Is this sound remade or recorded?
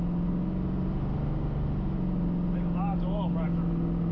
recorded